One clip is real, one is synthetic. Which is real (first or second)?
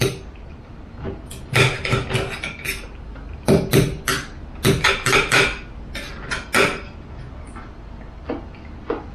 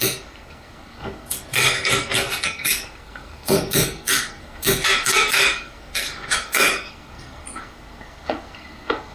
first